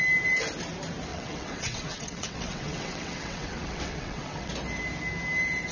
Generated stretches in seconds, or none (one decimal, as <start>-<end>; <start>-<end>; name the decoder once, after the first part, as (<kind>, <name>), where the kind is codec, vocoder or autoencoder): 1.1-4.5 (vocoder, WaveNeXt)